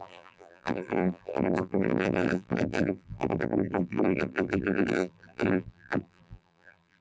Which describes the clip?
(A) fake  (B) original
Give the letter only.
A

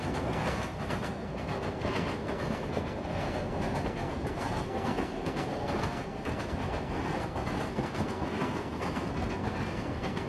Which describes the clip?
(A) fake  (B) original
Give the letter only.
A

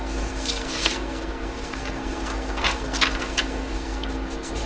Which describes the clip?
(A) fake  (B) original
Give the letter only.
A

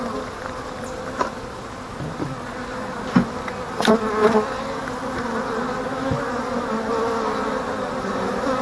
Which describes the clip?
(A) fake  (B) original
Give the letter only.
B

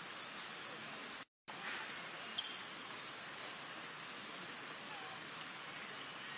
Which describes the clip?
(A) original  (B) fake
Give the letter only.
A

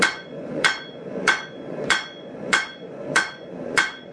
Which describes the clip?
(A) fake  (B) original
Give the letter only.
A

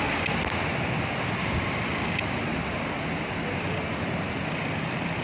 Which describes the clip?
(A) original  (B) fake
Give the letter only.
A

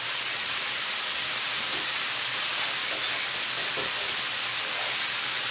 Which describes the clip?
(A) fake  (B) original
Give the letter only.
B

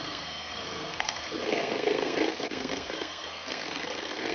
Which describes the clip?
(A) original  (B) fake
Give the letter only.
B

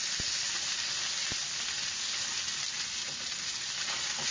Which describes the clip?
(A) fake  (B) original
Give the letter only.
B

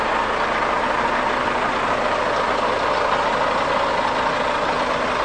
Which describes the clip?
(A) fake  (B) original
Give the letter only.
B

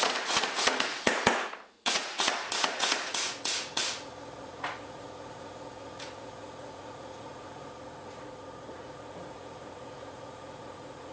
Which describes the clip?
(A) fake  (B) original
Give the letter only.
A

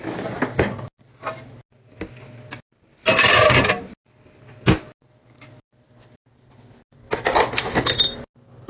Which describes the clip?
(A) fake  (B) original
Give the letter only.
B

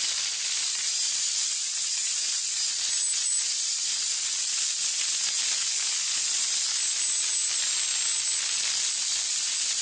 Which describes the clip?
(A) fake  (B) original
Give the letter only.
B